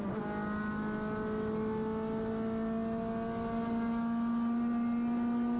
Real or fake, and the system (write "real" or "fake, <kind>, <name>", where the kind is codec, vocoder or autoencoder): real